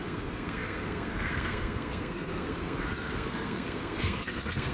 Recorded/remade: remade